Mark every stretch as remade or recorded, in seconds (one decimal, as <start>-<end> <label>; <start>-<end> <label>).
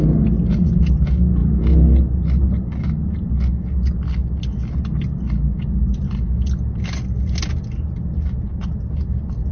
0.0-9.5 recorded